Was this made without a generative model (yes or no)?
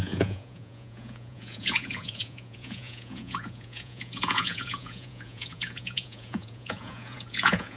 no